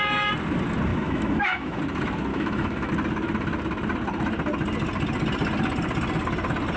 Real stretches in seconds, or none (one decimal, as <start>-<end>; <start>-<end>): 0.0-0.9; 1.8-2.3; 2.9-6.8